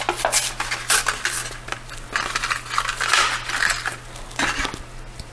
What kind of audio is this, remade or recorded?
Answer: recorded